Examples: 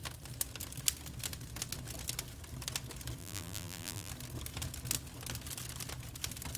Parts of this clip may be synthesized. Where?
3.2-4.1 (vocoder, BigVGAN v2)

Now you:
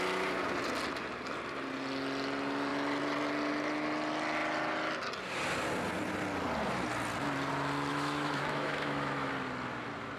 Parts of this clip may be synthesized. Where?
7.9-9.3 (autoencoder, DAC-VAE)

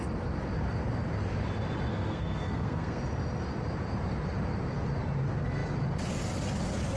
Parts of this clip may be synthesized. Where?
1.9-3.0 (codec, SNAC)

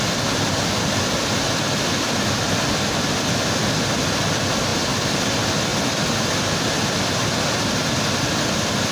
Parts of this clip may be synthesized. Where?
4.7-5.2 (vocoder, BigVGAN v2); 5.7-6.8

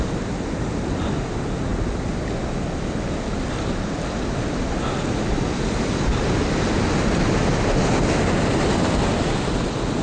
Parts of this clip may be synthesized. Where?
none